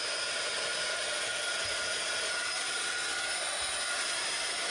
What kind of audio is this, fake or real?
real